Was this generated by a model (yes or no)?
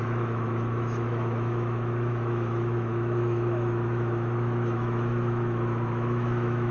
yes